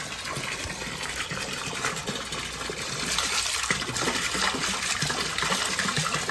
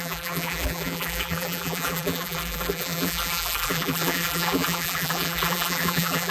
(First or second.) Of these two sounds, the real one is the first